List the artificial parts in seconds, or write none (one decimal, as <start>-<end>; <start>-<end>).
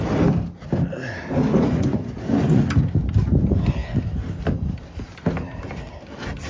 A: 1.5-2.6